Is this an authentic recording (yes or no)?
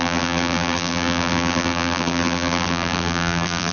no